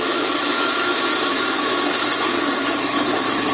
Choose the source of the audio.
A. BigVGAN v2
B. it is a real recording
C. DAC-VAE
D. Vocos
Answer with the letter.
C